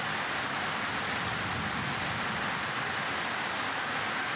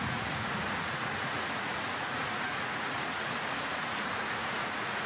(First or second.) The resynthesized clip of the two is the second